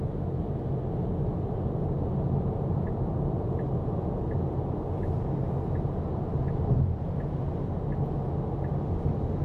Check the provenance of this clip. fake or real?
real